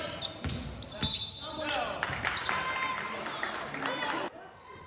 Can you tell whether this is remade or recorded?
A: recorded